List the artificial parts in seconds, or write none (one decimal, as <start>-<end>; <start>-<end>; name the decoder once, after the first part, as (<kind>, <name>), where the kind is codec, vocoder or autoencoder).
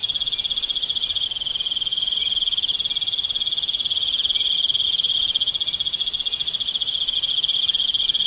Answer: none